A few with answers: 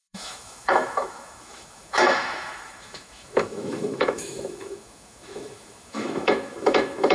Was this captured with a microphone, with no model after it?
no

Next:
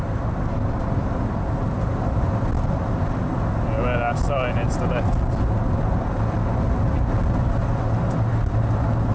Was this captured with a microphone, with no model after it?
yes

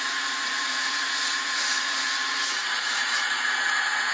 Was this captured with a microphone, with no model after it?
no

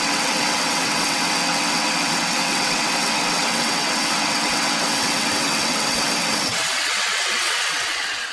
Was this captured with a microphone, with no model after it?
no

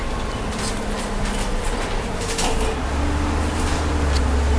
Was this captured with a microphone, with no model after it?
yes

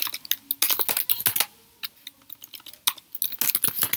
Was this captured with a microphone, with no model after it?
yes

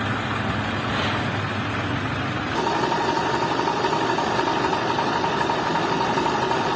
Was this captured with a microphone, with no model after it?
yes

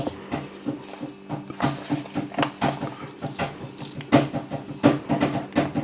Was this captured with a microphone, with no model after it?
yes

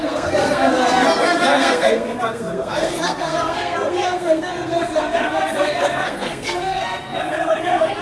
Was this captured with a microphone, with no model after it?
no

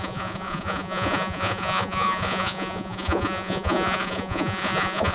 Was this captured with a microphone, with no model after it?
no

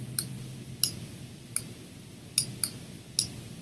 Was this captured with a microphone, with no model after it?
yes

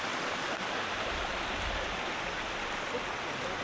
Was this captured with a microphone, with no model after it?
yes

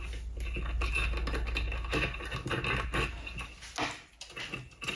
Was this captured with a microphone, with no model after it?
yes